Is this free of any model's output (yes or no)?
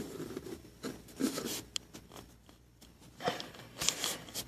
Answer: yes